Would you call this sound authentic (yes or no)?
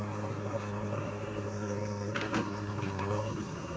no